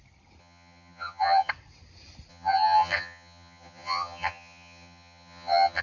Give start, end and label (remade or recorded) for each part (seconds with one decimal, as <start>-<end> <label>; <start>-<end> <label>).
0.0-0.4 recorded; 0.4-1.5 remade; 1.5-2.3 recorded; 2.3-5.8 remade